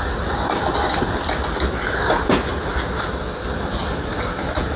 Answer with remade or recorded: recorded